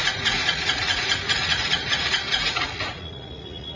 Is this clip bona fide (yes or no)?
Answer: no